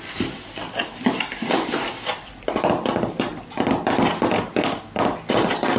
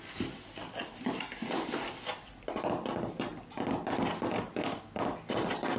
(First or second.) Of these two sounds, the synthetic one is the first